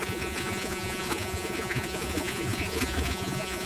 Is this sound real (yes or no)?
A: no